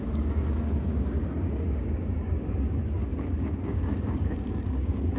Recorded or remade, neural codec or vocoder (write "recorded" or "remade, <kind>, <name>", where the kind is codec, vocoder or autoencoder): remade, codec, DAC